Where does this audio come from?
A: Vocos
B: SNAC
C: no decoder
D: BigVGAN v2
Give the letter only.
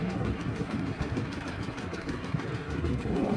B